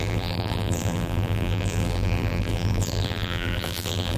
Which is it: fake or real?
fake